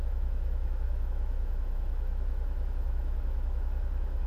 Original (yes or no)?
no